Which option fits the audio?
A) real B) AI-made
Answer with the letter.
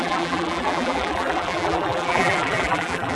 B